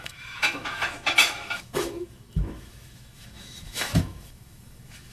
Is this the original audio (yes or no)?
no